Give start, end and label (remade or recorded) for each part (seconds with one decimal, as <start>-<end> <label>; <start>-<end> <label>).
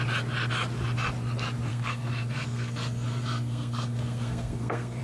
0.0-1.7 recorded; 1.7-5.0 remade